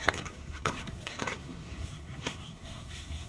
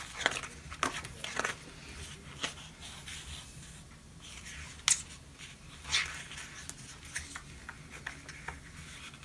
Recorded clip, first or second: second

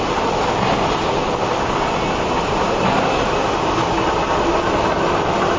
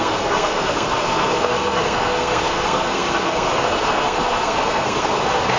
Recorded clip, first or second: first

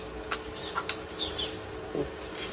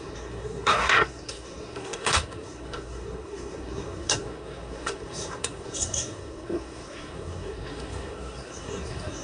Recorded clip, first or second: first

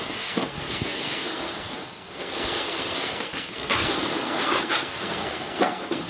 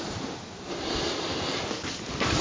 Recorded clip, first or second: second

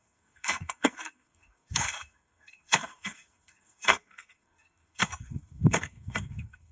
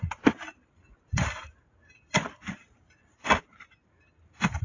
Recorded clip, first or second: second